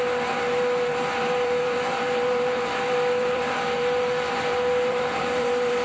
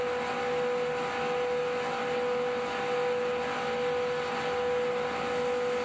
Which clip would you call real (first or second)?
second